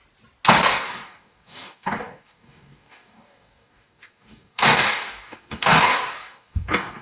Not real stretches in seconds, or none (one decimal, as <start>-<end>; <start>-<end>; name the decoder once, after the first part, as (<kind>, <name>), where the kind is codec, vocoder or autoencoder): 0.7-7.0 (codec, DAC)